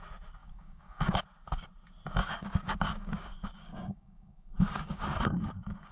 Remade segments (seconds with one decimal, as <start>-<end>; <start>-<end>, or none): 0.4-1.2; 2.2-5.9